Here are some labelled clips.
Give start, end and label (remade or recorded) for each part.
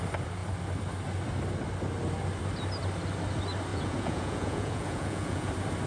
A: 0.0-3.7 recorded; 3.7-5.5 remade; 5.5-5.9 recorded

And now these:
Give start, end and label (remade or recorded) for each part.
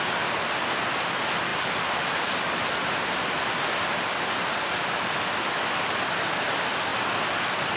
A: 0.0-7.8 recorded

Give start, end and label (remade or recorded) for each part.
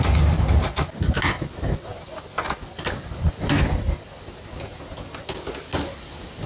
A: 0.0-6.5 recorded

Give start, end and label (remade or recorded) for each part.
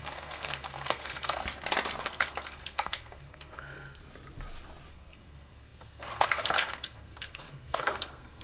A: 0.0-1.4 remade; 1.4-2.0 recorded; 2.0-4.0 remade; 4.0-4.9 recorded; 4.9-8.4 remade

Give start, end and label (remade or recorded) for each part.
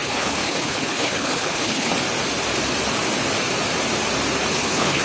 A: 0.0-1.9 remade; 1.9-4.5 recorded; 4.5-5.0 remade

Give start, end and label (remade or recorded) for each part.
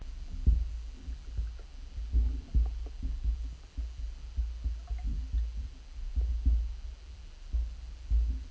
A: 0.0-8.5 recorded